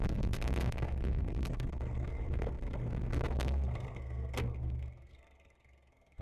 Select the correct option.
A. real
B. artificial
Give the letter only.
B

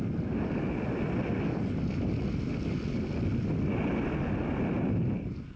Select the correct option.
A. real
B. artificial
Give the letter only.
A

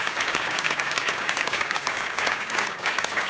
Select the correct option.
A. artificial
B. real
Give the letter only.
A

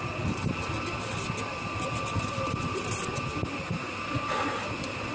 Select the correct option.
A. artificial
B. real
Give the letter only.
B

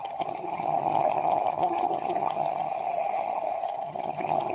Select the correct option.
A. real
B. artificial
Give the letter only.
B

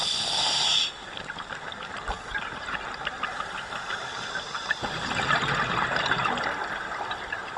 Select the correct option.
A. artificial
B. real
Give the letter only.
B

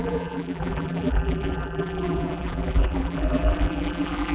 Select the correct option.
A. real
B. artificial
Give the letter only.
B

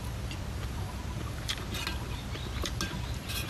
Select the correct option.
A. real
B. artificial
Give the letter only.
A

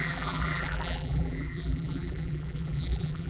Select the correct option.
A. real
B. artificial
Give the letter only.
B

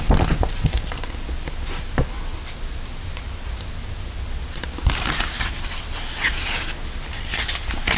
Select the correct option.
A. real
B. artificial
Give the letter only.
A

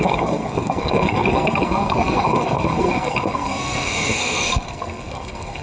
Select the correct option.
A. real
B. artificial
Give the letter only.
B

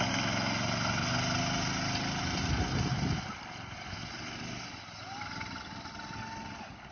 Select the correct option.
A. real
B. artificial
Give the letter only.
A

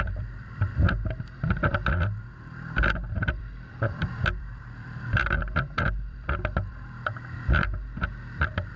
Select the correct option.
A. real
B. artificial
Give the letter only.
B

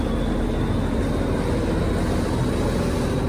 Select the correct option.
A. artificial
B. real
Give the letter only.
B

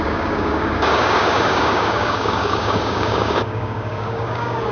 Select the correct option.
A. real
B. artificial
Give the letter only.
B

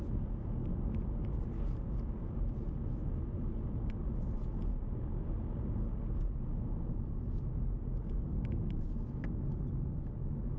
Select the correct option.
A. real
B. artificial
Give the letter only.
A